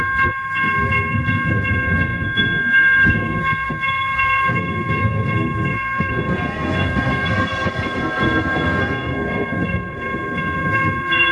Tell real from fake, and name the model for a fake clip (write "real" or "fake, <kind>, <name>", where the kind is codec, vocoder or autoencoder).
fake, codec, SNAC